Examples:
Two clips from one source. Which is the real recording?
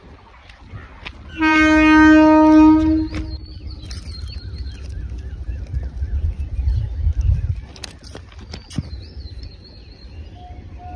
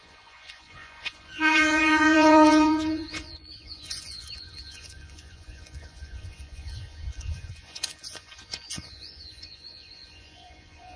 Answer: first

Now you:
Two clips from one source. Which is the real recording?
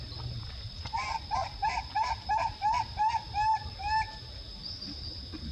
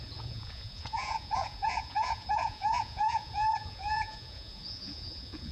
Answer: first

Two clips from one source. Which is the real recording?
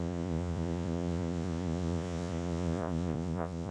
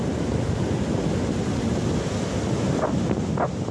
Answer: second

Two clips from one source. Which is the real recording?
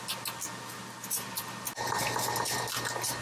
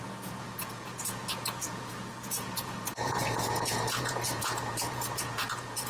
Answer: first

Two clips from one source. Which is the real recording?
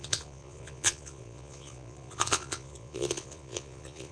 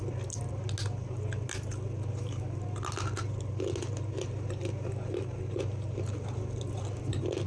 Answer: second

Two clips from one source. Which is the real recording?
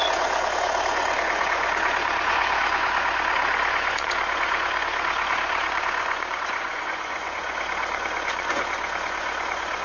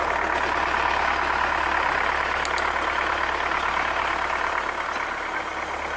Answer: second